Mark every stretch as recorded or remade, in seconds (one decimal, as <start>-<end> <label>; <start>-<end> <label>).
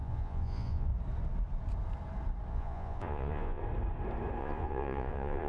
0.0-0.9 remade; 0.9-2.5 recorded; 2.5-3.6 remade; 3.6-4.4 recorded; 4.4-5.5 remade